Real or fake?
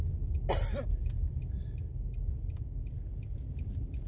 real